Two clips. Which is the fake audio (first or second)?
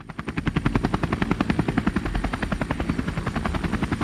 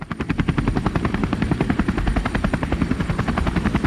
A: second